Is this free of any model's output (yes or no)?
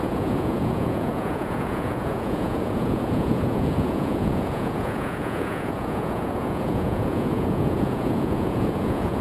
no